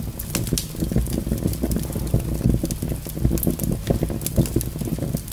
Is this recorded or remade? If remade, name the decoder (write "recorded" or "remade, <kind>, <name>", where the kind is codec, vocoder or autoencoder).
recorded